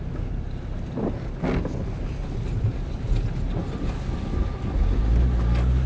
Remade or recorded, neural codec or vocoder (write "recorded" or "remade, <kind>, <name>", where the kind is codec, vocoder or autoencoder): recorded